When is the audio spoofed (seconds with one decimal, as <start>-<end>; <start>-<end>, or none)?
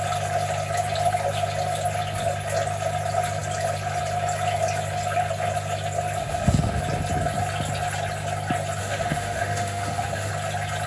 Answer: 6.2-6.8; 8.8-10.3